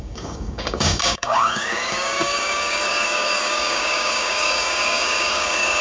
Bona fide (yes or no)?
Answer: no